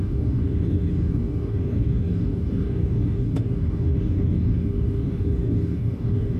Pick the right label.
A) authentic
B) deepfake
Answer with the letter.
B